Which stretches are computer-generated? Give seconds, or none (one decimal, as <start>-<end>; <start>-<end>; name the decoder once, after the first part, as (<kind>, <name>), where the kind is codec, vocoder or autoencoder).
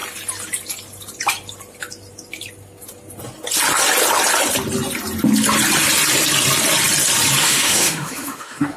7.4-8.8 (autoencoder, DAC-VAE)